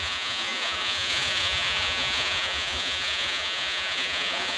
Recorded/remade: remade